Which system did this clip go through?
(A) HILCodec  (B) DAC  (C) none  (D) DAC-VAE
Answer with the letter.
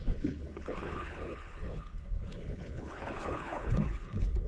A